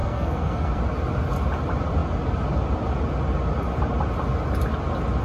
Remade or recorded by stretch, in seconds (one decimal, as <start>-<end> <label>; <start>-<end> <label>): 0.0-0.8 remade; 0.8-5.2 recorded